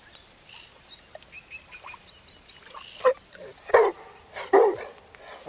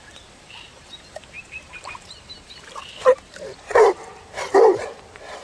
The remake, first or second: second